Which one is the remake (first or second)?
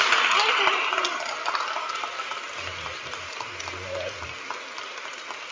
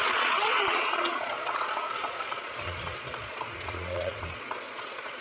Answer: second